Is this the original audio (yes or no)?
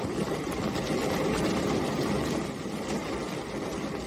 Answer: yes